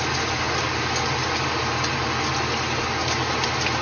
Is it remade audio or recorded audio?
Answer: recorded